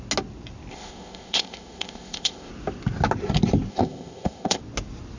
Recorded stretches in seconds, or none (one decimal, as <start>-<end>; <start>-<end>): 0.0-0.7; 2.5-3.7; 4.6-5.2